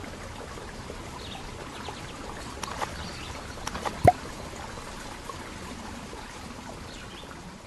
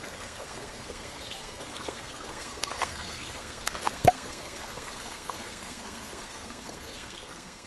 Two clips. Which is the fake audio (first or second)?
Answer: second